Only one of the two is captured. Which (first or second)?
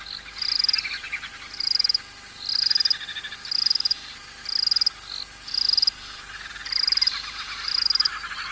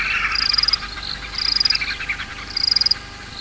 first